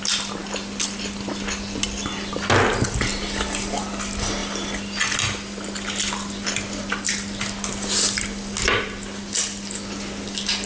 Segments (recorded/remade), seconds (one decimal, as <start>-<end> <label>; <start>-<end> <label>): 0.0-10.7 recorded